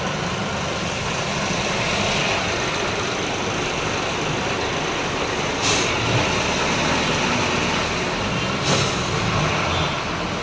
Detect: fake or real real